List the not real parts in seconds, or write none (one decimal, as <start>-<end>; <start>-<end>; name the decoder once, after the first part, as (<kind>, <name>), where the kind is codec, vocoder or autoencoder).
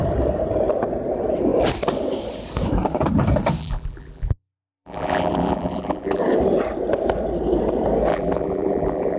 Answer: 3.6-6.2 (vocoder, BigVGAN v2); 8.1-9.2